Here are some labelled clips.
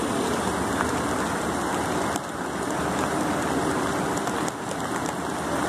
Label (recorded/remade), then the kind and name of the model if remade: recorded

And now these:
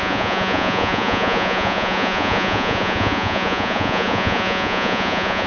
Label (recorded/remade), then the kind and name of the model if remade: remade, vocoder, Vocos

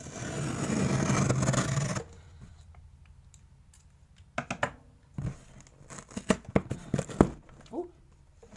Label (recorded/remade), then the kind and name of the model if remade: recorded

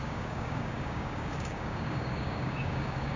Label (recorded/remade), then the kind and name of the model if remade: remade, codec, DAC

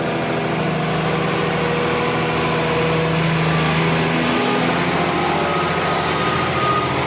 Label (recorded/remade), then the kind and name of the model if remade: recorded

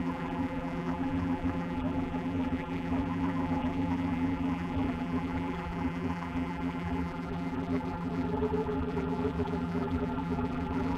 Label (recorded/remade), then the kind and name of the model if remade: remade, vocoder, BigVGAN v2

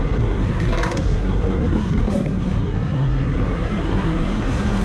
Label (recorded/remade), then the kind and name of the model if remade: remade, codec, SNAC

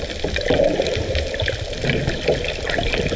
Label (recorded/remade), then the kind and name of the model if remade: recorded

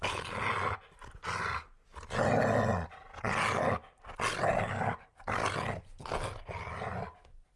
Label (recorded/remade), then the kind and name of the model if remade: recorded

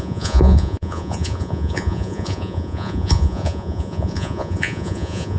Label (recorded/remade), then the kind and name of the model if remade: remade, vocoder, Vocos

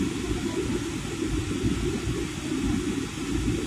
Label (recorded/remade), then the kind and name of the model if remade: recorded